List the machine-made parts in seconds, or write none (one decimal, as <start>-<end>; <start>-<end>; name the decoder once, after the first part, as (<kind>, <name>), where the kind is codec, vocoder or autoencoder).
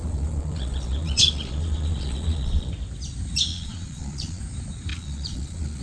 0.0-2.7 (vocoder, Vocos); 3.5-4.4; 4.9-5.8